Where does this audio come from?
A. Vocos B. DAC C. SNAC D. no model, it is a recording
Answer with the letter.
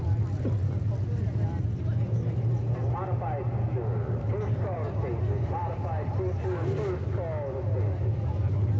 D